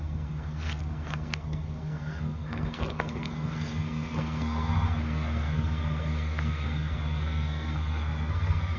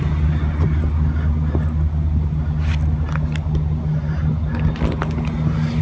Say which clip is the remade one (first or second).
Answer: first